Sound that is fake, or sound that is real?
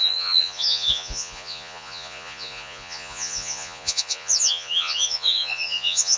fake